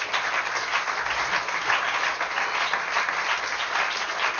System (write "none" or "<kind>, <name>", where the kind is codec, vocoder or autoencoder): none